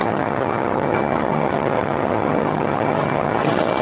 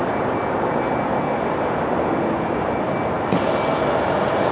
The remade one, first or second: first